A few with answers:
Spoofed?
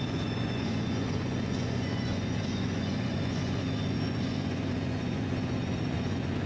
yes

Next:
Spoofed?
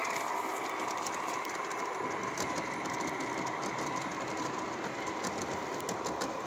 no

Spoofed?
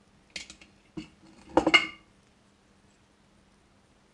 no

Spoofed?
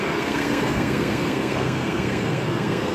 yes